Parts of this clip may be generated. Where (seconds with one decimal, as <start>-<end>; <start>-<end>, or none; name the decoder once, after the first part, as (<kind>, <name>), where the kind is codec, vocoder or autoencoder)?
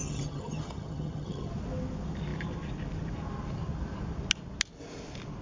0.0-1.5 (vocoder, HiFi-GAN)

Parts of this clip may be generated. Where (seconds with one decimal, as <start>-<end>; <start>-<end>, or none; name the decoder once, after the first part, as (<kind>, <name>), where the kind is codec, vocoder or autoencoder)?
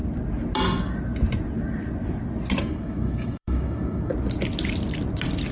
2.6-4.1 (autoencoder, DAC-VAE)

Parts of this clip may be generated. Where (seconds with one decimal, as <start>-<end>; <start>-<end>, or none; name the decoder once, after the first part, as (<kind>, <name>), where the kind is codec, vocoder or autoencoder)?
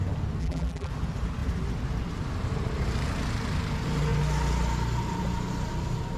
0.4-0.9 (vocoder, BigVGAN v2)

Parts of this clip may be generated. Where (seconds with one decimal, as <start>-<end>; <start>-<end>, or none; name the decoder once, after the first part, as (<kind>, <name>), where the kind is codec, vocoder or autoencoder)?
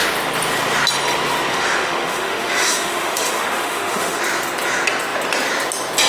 1.5-4.2 (autoencoder, DAC-VAE)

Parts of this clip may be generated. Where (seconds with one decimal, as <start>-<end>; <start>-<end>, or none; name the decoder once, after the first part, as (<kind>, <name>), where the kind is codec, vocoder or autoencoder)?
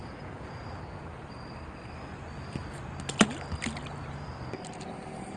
0.0-0.6 (vocoder, Vocos)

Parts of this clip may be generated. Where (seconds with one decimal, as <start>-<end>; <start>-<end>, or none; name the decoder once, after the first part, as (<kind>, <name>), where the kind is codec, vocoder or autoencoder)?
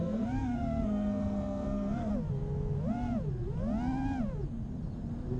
0.0-2.1 (codec, SNAC)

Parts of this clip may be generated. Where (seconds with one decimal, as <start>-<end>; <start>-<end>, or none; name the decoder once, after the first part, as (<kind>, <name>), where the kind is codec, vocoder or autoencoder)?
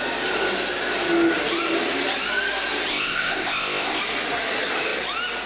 2.9-4.0 (codec, ZipCodec)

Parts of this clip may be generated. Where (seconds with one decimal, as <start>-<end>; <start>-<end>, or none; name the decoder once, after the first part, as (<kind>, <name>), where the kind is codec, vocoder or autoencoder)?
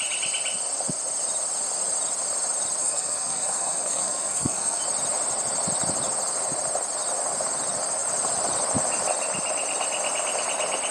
2.8-4.8 (codec, SNAC)